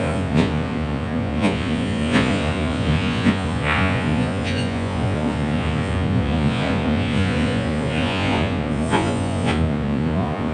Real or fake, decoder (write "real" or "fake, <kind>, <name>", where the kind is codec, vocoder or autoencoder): fake, vocoder, Vocos